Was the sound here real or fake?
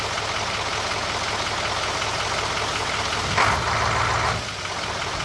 real